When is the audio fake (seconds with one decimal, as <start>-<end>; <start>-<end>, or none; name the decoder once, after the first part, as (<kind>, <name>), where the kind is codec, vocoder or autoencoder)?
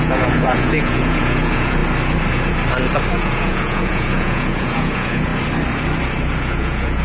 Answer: 0.0-1.8 (vocoder, Vocos); 3.1-5.3; 6.5-7.0